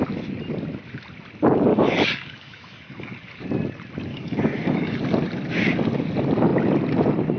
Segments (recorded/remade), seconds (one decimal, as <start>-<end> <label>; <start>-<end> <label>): 0.0-1.7 recorded; 1.7-3.4 remade; 3.4-4.1 recorded; 4.1-5.0 remade; 5.0-7.4 recorded